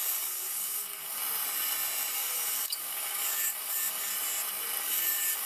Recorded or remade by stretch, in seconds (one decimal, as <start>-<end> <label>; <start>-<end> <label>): 0.0-1.2 remade; 1.2-2.1 recorded; 2.1-4.1 remade; 4.1-4.8 recorded; 4.8-5.5 remade